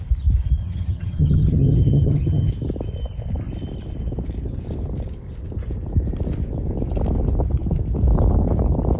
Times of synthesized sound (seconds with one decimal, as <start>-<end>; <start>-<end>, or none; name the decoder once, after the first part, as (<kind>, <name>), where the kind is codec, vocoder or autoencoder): 0.6-2.5 (vocoder, HiFi-GAN)

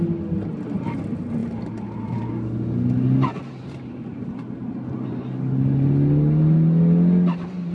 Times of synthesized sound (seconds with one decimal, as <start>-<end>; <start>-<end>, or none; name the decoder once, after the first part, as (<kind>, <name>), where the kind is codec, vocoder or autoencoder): none

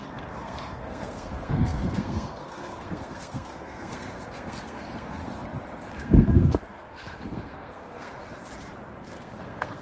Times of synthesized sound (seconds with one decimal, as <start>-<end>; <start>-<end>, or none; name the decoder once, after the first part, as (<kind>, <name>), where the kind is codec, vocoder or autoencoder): 0.0-5.2 (codec, SNAC); 5.9-8.1; 9.0-9.8

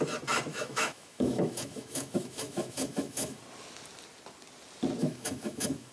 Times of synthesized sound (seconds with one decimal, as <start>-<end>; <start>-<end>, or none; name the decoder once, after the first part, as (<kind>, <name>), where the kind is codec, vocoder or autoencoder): 0.5-3.4 (autoencoder, DAC-VAE); 5.0-5.9

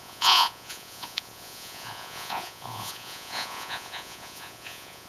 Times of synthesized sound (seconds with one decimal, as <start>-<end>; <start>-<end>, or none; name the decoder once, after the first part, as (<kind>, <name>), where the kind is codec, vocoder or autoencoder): 0.0-5.1 (vocoder, Vocos)

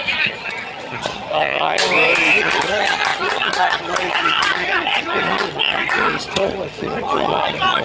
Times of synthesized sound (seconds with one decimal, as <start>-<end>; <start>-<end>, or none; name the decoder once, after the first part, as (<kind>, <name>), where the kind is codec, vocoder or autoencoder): 0.0-1.8 (vocoder, HiFi-GAN); 2.4-7.8

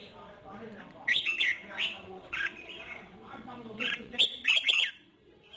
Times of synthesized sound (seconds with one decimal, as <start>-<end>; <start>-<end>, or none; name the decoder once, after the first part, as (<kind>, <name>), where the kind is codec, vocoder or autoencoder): 0.0-5.6 (vocoder, WaveNeXt)

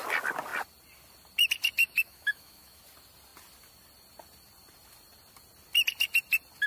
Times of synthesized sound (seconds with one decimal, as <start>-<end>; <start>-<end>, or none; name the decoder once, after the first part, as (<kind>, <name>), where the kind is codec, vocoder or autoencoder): 1.8-2.8 (autoencoder, DAC-VAE)